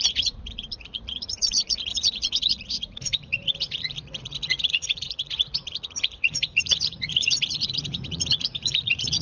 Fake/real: fake